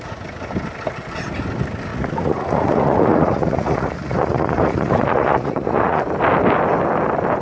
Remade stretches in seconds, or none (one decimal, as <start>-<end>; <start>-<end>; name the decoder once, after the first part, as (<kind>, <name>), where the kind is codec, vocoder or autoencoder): 1.9-6.0 (vocoder, Vocos)